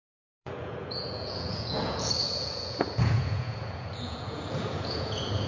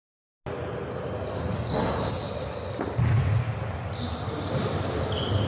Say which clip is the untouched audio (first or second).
second